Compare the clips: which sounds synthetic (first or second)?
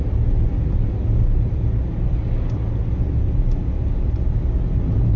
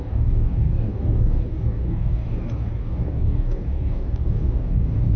second